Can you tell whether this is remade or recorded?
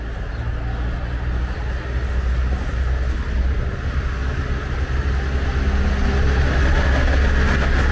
recorded